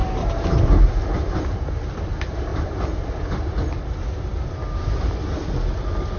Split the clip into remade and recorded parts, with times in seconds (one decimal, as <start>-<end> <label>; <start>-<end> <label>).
0.0-2.5 recorded; 2.5-3.7 remade; 3.7-6.2 recorded